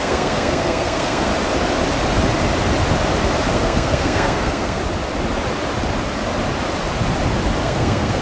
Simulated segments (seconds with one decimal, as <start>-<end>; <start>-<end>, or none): 0.0-1.3; 3.5-4.8; 7.6-8.2